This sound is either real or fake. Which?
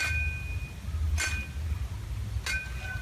real